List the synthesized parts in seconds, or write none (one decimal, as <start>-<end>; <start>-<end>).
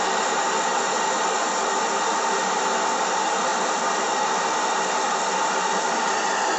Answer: none